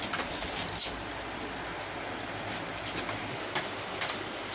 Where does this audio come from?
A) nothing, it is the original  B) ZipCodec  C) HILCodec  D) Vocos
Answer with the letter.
A